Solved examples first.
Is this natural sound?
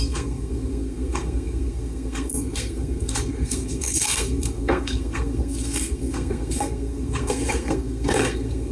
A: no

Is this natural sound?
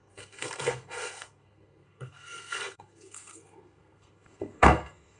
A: no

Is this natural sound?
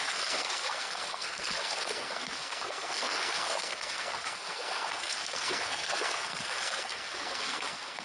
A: no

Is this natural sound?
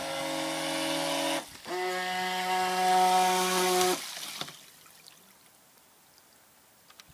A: yes